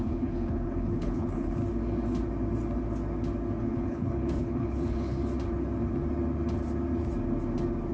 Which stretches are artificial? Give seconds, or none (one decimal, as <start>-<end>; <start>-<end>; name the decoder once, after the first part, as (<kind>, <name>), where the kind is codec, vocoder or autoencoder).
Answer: 0.0-1.6 (codec, HILCodec); 3.6-5.2